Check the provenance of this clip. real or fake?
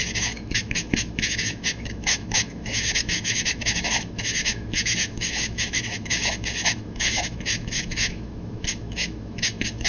fake